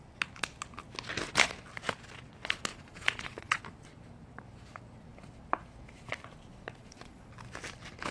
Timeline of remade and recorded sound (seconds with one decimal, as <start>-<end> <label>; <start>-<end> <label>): 0.0-2.7 recorded; 2.7-3.6 remade; 3.6-6.8 recorded; 6.8-7.3 remade; 7.3-8.1 recorded